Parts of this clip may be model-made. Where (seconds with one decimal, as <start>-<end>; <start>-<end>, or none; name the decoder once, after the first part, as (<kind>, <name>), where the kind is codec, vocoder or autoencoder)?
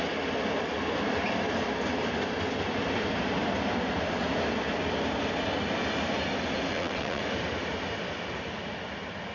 6.7-7.2 (vocoder, WaveNeXt)